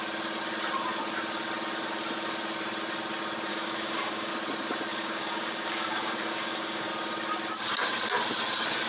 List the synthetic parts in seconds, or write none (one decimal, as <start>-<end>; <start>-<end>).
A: 3.5-4.3; 4.9-6.9

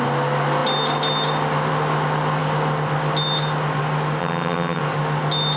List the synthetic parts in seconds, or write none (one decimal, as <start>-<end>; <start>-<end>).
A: 4.2-4.8

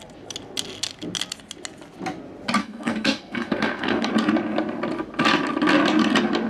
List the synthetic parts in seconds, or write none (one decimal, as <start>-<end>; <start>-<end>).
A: 2.6-4.1

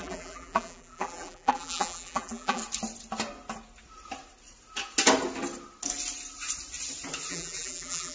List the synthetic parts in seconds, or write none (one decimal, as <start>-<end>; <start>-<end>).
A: 0.0-2.6; 7.3-8.1